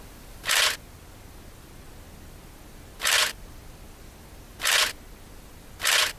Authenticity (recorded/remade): recorded